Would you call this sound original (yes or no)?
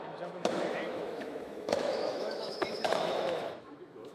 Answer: no